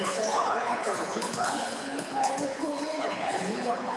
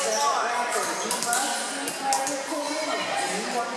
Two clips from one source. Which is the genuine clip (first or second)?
second